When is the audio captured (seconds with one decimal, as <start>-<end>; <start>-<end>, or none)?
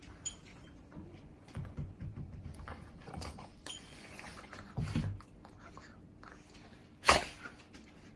0.0-0.5; 4.8-8.2